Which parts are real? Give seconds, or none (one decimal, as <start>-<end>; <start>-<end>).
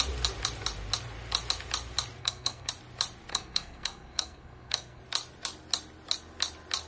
0.0-2.2; 2.7-3.3; 5.0-6.9